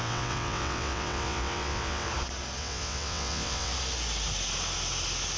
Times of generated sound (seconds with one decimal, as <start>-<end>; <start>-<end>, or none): 0.0-2.1; 2.6-3.7